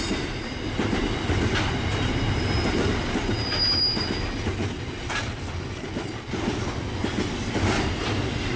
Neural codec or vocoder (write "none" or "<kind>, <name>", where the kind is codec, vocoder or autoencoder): none